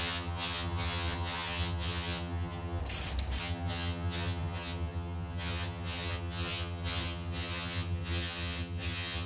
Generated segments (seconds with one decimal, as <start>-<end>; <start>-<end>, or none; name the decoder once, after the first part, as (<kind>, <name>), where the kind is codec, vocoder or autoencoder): 0.0-2.8 (vocoder, HiFi-GAN); 3.4-9.3

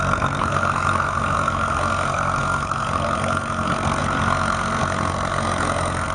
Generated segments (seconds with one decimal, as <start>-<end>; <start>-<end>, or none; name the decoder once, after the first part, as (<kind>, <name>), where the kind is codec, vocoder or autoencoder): 0.0-6.1 (codec, SNAC)

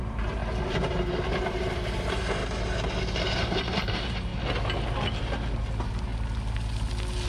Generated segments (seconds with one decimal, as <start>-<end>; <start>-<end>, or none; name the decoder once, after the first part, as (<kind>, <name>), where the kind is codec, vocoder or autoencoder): 0.0-2.4 (vocoder, BigVGAN v2); 3.3-4.3; 5.5-6.1

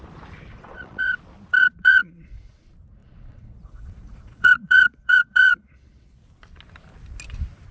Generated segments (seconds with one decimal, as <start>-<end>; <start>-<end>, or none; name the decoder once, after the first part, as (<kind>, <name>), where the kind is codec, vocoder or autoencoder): 0.5-1.2 (vocoder, Vocos); 1.6-2.6; 3.0-6.2

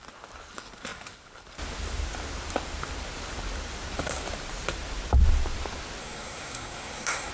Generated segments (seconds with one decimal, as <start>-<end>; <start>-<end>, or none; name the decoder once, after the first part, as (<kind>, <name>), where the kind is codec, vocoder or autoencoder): 6.0-7.3 (codec, SNAC)

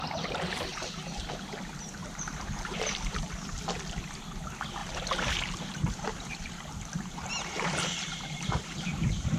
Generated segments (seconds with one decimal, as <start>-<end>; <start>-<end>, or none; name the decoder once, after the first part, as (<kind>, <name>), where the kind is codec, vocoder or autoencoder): 0.7-1.2 (vocoder, BigVGAN v2); 2.0-3.0; 4.8-9.4

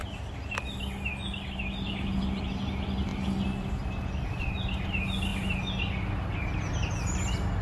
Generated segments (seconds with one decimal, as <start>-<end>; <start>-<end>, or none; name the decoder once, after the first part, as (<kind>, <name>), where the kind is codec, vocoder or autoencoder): none